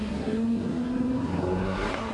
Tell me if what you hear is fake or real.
fake